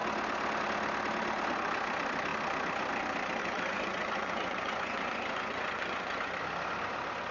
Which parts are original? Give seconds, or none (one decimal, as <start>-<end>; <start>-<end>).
0.0-3.4; 6.4-7.3